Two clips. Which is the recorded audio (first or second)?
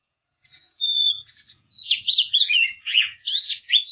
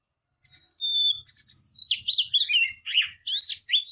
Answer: second